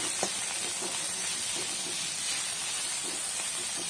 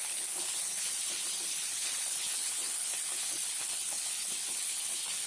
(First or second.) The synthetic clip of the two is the second